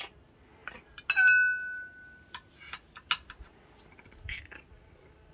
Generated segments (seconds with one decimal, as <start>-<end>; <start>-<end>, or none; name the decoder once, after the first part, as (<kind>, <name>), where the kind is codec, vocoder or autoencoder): none